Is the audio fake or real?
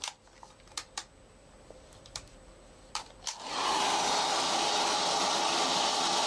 real